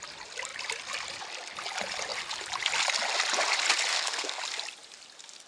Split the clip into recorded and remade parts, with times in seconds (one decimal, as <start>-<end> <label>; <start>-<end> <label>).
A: 0.0-3.9 recorded; 3.9-4.4 remade; 4.4-5.5 recorded